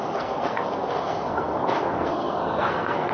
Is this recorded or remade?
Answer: remade